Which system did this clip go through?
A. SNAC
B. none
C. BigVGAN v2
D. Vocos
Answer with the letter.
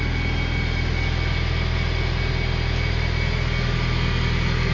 B